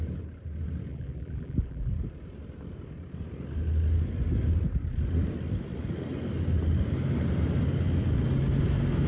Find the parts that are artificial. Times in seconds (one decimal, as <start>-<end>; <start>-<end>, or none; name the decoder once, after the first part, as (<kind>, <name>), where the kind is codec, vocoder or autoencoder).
0.9-1.9 (vocoder, BigVGAN v2)